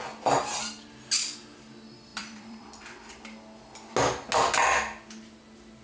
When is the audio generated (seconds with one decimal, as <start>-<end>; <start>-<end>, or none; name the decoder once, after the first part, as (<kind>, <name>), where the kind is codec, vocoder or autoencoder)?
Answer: 2.1-2.8 (vocoder, BigVGAN v2)